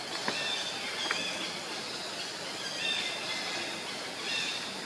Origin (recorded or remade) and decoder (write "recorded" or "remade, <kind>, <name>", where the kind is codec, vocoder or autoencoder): recorded